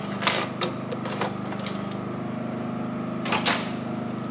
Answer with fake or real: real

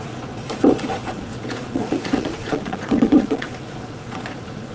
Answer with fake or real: fake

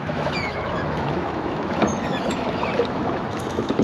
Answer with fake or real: fake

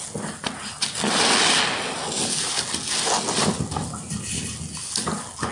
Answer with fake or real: real